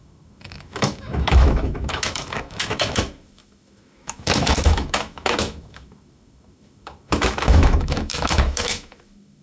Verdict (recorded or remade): remade